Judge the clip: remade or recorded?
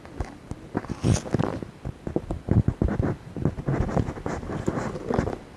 recorded